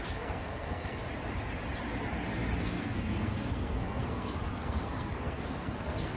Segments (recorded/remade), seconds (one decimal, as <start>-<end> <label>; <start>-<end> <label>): 0.0-1.0 remade; 1.0-2.6 recorded; 2.6-6.2 remade